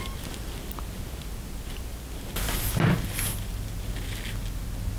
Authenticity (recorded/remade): recorded